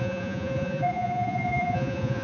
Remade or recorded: remade